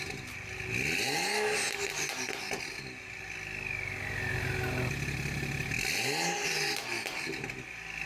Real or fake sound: real